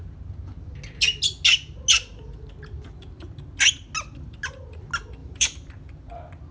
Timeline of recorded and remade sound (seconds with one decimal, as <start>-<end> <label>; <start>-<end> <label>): 0.0-5.2 recorded; 5.2-5.7 remade; 5.7-6.5 recorded